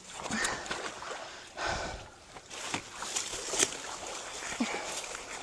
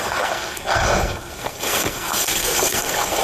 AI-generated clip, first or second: second